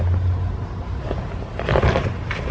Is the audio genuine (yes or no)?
yes